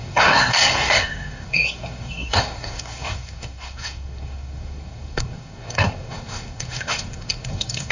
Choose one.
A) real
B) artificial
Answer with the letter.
B